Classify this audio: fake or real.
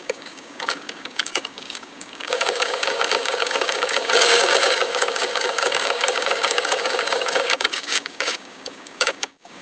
fake